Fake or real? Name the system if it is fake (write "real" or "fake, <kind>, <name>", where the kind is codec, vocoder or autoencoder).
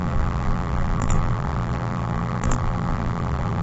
fake, vocoder, BigVGAN v2